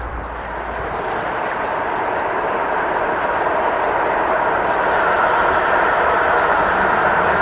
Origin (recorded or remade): remade